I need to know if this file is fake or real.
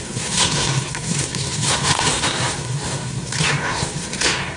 fake